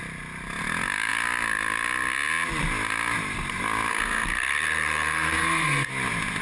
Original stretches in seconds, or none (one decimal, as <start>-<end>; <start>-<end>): 0.0-3.9; 5.9-6.4